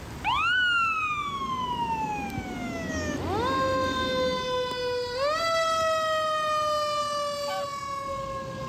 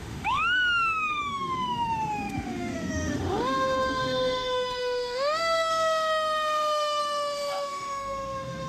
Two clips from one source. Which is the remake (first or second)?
second